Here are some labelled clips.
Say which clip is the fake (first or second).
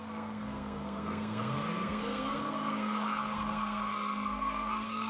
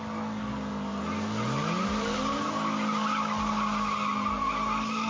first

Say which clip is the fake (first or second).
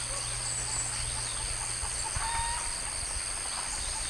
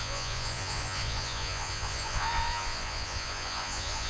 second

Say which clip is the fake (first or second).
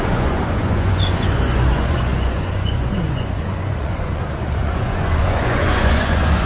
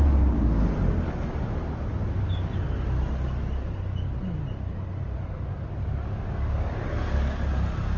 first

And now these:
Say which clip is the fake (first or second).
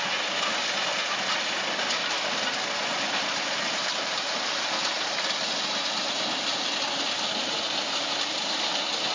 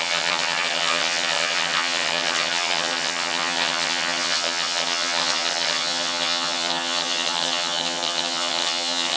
second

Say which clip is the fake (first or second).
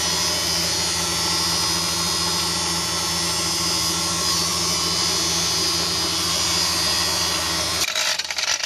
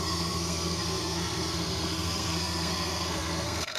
second